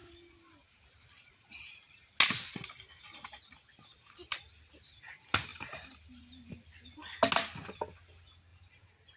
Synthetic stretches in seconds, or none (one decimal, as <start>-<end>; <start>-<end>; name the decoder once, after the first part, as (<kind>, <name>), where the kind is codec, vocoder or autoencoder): 0.0-2.1 (vocoder, BigVGAN v2); 5.5-6.4; 8.5-9.2